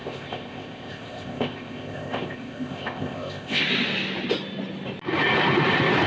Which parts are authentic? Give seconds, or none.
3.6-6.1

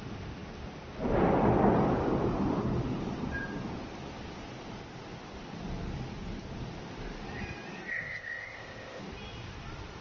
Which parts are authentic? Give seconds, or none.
0.0-7.9; 9.0-10.0

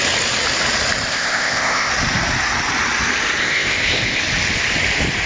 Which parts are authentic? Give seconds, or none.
0.0-1.1; 1.9-3.4; 4.2-5.3